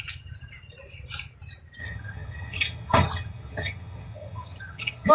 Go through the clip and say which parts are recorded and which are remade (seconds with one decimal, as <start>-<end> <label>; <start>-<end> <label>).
0.0-1.8 recorded; 1.8-5.1 remade